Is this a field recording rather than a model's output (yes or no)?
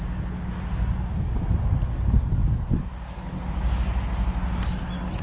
yes